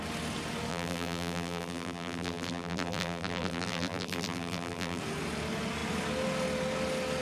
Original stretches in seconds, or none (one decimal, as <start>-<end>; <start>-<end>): 0.0-0.7; 5.0-7.2